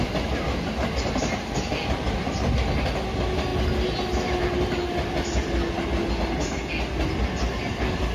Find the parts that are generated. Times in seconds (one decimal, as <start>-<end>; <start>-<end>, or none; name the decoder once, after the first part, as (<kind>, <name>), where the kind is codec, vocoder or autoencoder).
none